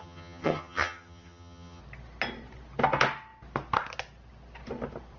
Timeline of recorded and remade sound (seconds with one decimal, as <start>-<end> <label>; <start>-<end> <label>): 0.0-1.8 remade; 1.8-5.2 recorded